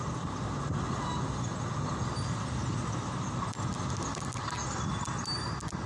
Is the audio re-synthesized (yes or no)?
no